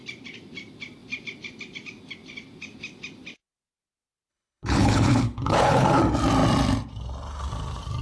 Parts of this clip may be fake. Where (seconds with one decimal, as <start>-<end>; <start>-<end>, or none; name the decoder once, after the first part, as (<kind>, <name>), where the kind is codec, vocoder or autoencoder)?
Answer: 4.3-6.0 (codec, HILCodec)